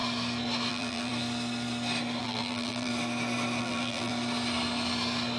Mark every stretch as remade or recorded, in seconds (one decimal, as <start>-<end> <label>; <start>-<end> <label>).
0.0-0.7 recorded; 0.7-1.1 remade; 1.1-2.2 recorded; 2.2-2.9 remade; 2.9-3.6 recorded; 3.6-4.1 remade; 4.1-5.4 recorded